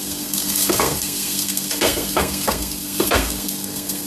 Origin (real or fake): fake